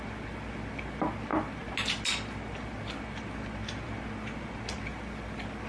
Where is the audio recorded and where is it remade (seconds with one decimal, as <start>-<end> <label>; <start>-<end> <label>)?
0.0-4.9 recorded; 4.9-5.7 remade